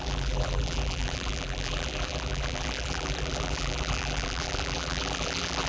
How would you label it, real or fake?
fake